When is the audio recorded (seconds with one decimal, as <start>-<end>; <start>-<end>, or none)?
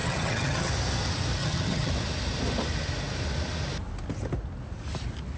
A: 0.7-1.4; 1.9-5.4